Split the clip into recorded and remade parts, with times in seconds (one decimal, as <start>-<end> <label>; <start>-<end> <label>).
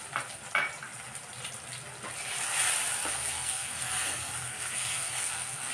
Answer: 0.0-3.0 recorded; 3.0-5.7 remade